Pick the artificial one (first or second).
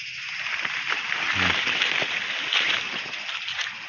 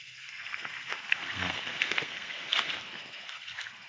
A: second